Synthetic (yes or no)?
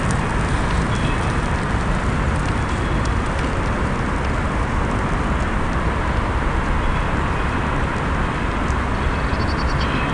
no